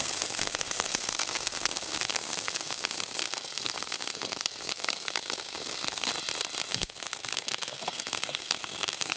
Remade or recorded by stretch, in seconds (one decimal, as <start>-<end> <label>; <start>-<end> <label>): 0.0-6.1 remade; 6.1-6.7 recorded; 6.7-9.2 remade